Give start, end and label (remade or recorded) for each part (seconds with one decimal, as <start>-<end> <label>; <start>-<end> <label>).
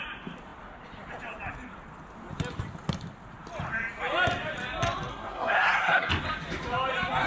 0.0-5.1 recorded; 5.1-6.1 remade; 6.1-7.3 recorded